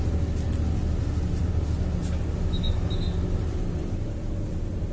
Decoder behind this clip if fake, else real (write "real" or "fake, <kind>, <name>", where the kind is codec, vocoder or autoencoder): real